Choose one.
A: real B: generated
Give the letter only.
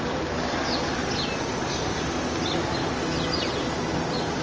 A